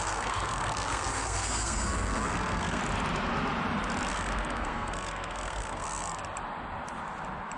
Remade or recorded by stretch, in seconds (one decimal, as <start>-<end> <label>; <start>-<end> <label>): 0.0-2.8 remade; 2.8-4.1 recorded; 4.1-6.2 remade; 6.2-7.6 recorded